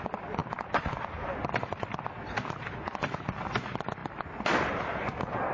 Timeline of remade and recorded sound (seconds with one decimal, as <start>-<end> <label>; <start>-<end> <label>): 0.0-5.5 remade